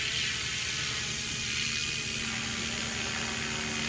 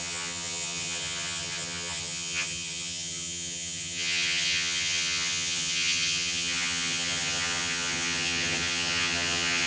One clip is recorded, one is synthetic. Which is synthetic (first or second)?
second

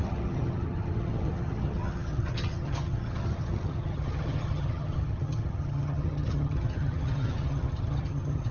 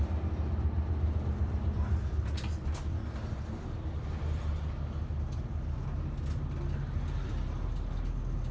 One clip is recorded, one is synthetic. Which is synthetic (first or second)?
first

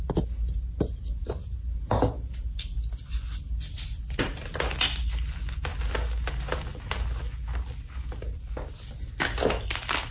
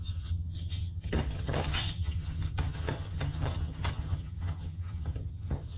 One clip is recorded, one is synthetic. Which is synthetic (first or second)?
second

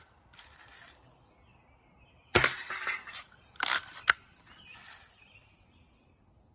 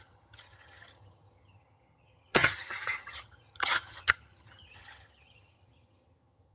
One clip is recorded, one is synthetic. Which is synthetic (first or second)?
second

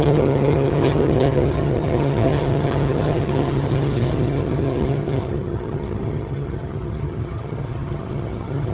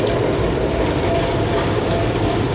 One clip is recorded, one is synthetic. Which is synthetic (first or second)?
first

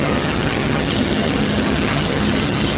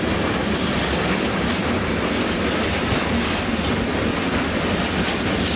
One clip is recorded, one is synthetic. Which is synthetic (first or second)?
first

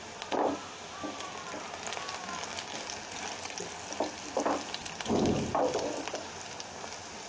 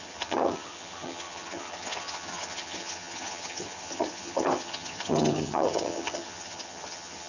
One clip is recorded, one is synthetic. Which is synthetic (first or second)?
second